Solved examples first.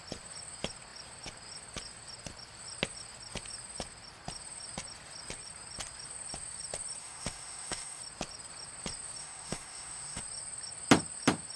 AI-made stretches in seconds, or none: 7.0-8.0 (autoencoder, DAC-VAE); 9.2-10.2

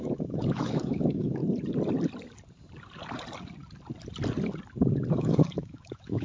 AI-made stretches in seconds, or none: 0.0-1.4 (autoencoder, DAC-VAE); 5.1-6.2

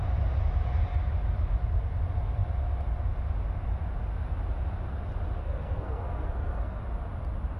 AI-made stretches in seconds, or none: 5.4-6.8 (codec, SNAC)